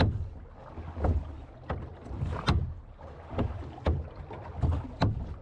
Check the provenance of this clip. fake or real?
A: real